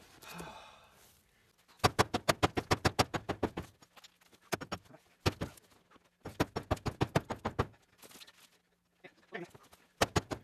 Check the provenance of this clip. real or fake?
real